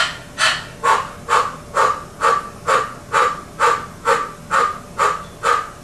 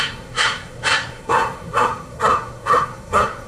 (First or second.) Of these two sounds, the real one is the first